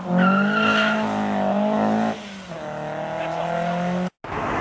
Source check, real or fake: real